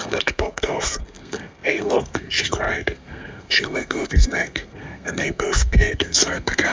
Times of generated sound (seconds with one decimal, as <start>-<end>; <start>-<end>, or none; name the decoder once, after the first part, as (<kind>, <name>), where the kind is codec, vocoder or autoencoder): 0.0-6.7 (codec, SNAC)